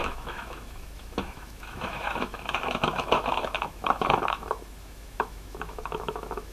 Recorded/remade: remade